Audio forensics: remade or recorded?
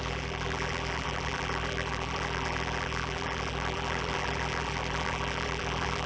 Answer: remade